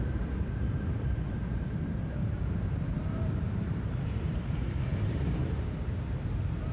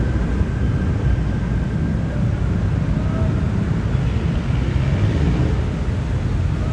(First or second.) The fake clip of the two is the first